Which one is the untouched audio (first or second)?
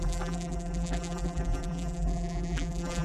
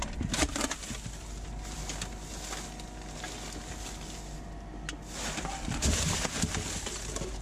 second